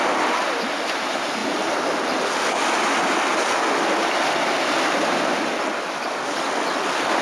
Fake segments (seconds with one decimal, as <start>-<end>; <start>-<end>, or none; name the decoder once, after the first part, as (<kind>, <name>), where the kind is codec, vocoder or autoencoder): none